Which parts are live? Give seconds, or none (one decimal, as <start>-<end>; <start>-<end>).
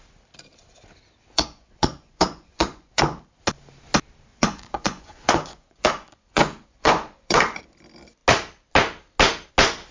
0.0-1.3; 3.2-4.3; 7.6-9.9